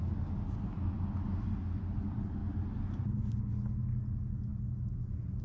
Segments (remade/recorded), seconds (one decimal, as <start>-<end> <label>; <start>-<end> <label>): 0.0-5.4 recorded